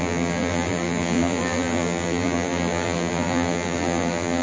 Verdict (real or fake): fake